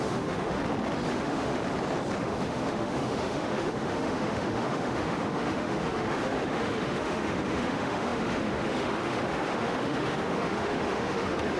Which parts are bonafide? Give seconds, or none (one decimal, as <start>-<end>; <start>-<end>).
0.6-1.1; 1.6-2.2